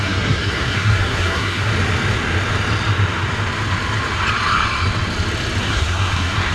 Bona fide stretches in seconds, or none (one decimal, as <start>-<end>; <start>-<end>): 1.7-5.6